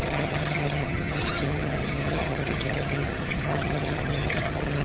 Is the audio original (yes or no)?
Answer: no